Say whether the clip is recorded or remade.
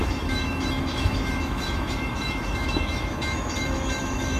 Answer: remade